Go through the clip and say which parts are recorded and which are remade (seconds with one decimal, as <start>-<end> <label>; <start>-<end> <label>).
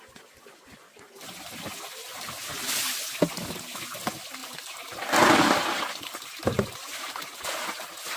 0.0-2.1 recorded; 2.1-2.6 remade; 2.6-4.4 recorded; 4.4-7.1 remade; 7.1-8.2 recorded